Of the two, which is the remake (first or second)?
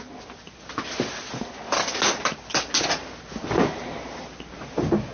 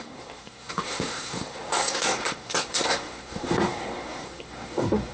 second